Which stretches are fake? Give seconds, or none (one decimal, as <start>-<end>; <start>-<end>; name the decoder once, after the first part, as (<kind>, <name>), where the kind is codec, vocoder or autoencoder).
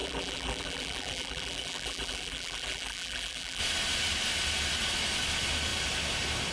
0.0-3.6 (vocoder, BigVGAN v2)